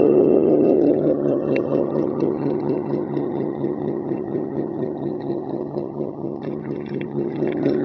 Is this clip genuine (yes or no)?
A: no